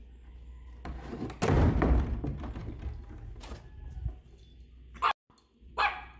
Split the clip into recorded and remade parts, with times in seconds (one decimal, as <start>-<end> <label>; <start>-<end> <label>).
0.0-6.2 recorded